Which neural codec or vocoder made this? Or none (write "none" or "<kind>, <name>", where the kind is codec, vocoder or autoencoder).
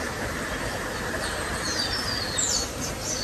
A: none